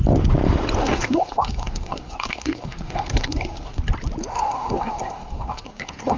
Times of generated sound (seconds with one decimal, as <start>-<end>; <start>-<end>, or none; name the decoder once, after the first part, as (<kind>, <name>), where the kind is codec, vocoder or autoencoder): 0.8-3.8 (codec, SNAC); 4.3-6.2